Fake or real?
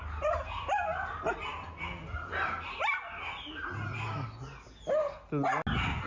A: real